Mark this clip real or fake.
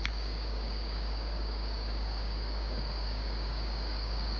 fake